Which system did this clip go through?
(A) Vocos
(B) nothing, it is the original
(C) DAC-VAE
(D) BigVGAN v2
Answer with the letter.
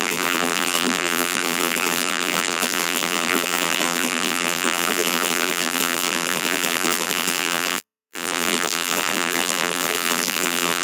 D